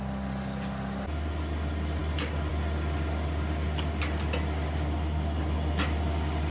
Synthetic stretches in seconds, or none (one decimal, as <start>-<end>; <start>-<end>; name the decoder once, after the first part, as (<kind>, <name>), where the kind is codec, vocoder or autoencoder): none